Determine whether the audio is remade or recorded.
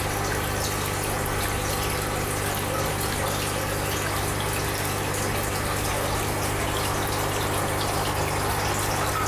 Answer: recorded